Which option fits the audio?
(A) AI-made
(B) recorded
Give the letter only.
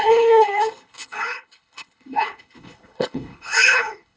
A